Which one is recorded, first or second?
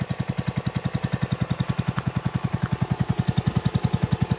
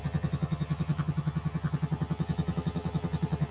first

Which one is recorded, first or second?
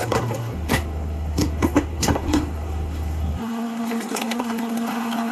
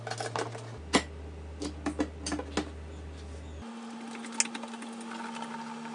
second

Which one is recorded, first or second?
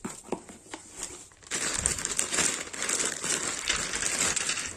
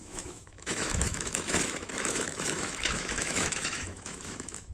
first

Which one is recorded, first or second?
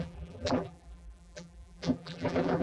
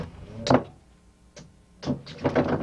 second